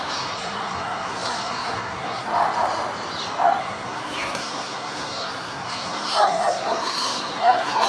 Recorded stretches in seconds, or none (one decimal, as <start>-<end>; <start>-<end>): 2.3-3.6